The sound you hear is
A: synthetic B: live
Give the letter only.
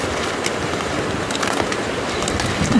B